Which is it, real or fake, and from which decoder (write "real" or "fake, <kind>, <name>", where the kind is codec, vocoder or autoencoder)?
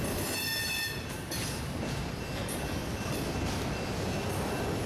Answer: real